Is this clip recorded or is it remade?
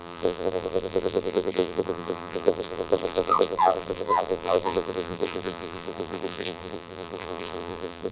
remade